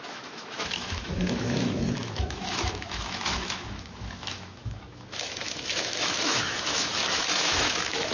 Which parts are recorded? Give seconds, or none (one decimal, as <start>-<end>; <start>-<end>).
none